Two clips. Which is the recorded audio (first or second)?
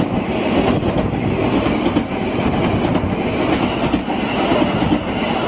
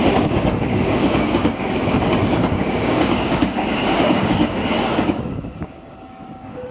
first